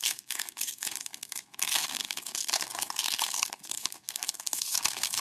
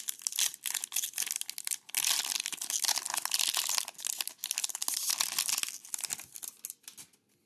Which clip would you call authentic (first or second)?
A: second